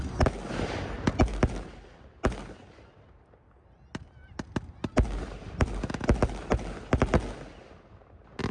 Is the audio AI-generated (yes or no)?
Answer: no